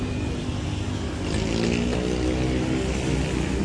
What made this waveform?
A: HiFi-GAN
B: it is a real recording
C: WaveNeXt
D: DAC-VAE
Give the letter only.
B